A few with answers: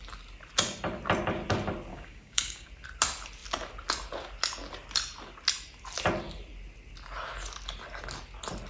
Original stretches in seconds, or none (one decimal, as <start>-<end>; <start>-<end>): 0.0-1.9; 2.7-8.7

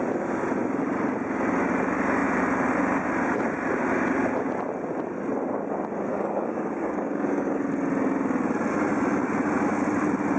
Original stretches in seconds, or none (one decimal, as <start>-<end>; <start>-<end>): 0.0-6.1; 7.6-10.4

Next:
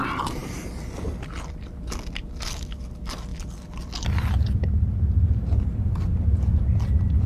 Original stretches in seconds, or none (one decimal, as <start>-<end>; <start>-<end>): 0.0-7.3